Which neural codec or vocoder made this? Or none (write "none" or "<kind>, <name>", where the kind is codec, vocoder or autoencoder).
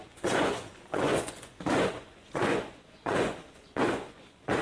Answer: vocoder, Vocos